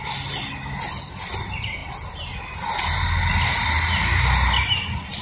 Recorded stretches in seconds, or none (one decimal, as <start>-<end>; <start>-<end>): 0.0-5.2